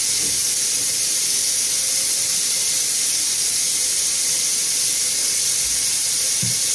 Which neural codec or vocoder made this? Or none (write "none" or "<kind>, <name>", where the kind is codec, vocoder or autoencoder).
none